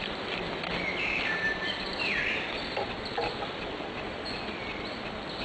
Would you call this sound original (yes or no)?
yes